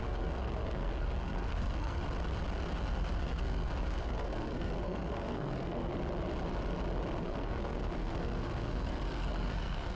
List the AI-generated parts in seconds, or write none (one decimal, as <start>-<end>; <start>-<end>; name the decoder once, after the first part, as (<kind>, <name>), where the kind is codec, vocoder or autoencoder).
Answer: 0.0-2.0 (codec, SNAC); 3.2-5.9; 7.2-9.9